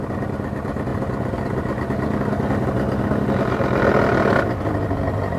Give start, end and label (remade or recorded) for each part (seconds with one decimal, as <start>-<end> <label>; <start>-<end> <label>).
0.0-5.4 recorded